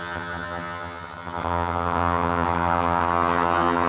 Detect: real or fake fake